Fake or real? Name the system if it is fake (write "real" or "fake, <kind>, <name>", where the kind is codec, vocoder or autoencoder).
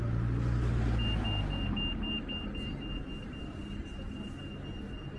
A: real